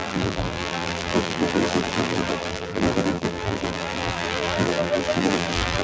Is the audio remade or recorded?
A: remade